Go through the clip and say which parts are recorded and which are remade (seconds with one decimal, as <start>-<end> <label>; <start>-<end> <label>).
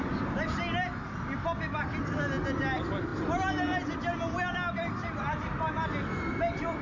0.0-6.8 recorded